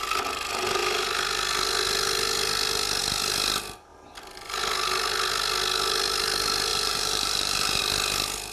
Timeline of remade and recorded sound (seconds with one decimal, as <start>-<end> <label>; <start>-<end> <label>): 0.0-6.7 recorded; 6.7-7.8 remade; 7.8-8.5 recorded